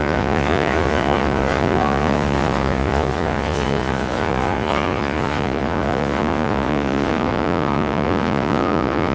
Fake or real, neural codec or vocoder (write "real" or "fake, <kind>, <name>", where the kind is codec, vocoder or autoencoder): fake, vocoder, Vocos